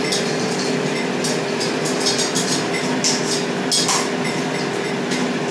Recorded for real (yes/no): yes